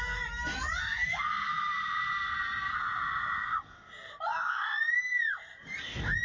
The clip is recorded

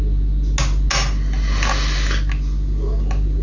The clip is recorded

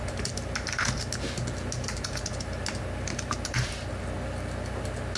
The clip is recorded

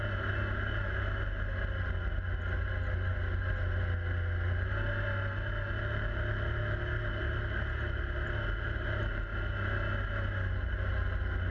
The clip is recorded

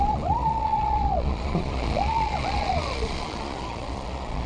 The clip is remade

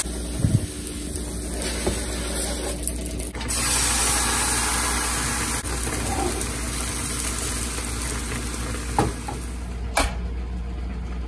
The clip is recorded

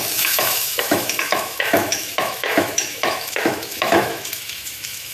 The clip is remade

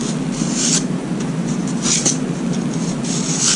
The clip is recorded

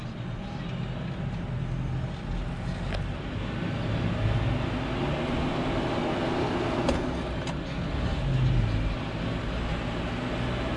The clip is recorded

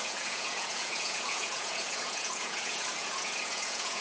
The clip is remade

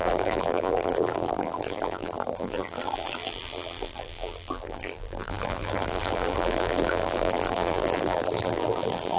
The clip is remade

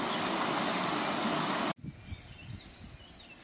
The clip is recorded